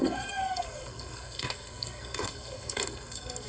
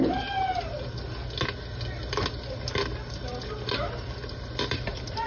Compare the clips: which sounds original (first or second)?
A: second